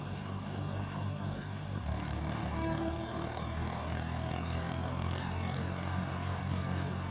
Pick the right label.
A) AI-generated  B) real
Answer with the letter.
A